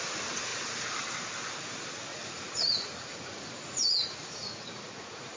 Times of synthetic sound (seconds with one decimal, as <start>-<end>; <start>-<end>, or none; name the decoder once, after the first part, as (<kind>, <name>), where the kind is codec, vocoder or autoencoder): 2.1-5.4 (vocoder, Vocos)